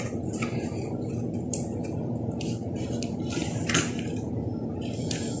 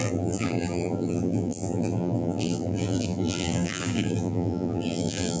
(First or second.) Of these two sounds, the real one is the first